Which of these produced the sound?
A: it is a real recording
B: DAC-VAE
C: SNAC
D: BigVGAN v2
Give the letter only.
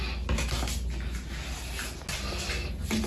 A